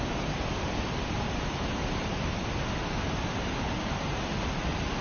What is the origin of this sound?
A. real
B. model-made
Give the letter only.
A